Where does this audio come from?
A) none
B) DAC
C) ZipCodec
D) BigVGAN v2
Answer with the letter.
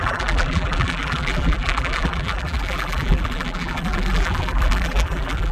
D